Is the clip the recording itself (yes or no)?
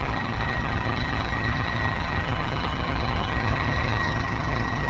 no